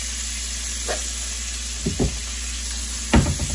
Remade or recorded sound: recorded